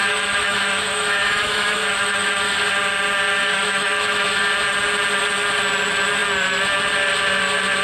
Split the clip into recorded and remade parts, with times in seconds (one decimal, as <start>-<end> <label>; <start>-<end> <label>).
0.0-2.7 remade; 2.7-3.3 recorded; 3.3-4.4 remade; 4.4-7.8 recorded